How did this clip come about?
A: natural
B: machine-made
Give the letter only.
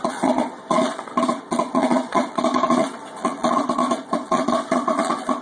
B